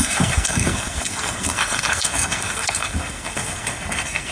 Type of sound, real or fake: fake